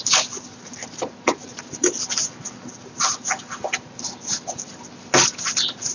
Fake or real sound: real